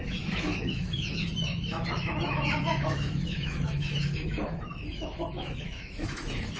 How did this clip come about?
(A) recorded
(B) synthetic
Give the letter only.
B